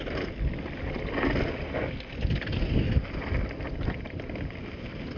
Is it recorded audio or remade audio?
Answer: recorded